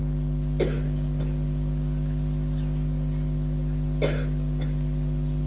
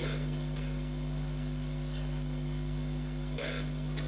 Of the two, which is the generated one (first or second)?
second